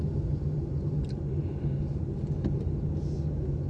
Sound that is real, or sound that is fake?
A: real